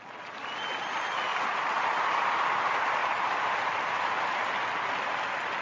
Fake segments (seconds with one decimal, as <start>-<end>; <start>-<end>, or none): 1.3-2.4; 3.0-4.4